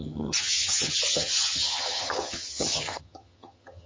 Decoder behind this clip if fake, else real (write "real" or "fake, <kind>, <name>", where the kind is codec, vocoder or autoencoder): fake, vocoder, HiFi-GAN